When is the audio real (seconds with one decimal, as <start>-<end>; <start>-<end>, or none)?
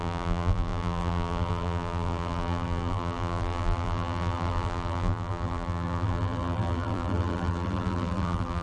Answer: none